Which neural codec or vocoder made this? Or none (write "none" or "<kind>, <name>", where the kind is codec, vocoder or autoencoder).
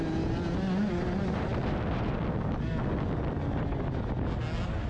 none